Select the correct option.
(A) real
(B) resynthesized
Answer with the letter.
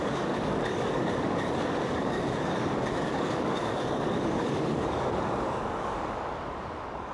B